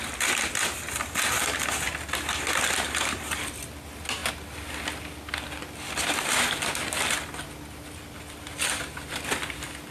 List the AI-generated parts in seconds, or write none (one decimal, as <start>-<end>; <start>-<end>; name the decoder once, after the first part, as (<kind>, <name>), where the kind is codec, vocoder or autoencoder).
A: none

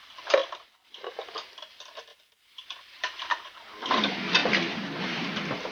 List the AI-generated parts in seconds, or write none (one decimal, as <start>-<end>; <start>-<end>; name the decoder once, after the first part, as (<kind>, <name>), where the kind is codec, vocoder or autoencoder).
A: 2.1-3.9 (vocoder, BigVGAN v2)

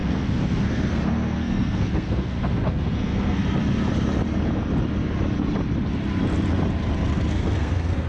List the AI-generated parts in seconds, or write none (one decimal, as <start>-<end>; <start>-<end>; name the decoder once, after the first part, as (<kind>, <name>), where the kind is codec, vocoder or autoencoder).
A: 0.0-3.4 (codec, SNAC); 7.3-8.1